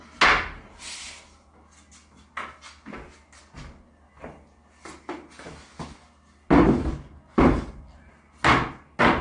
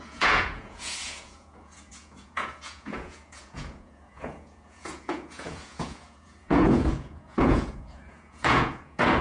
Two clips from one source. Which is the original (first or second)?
first